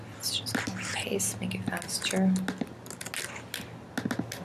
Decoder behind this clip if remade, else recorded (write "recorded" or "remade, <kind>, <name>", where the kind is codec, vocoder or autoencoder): recorded